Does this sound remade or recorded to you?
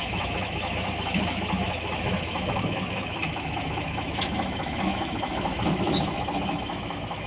remade